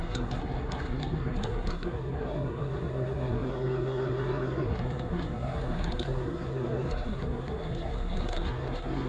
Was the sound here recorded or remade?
remade